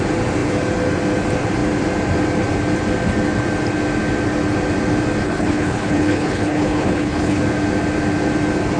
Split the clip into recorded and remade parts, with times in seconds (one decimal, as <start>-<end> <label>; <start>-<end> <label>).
0.0-5.2 recorded; 5.2-7.4 remade; 7.4-8.8 recorded